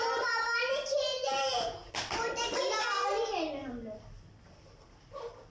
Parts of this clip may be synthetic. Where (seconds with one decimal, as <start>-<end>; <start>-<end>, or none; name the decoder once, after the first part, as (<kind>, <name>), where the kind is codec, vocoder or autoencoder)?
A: 1.1-1.9 (vocoder, Vocos)

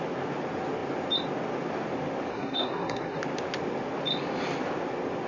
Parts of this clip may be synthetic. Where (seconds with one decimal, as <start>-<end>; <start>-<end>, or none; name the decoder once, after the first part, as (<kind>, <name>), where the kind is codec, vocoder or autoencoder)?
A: 2.3-3.2 (codec, SNAC)

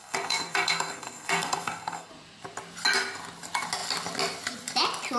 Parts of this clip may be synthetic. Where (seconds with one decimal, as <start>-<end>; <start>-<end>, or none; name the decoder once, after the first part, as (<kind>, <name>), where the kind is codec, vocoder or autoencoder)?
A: 0.0-2.1 (codec, SNAC)